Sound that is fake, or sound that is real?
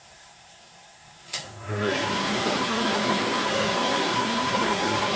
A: fake